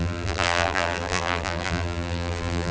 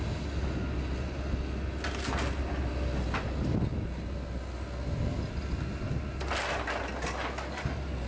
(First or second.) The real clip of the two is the second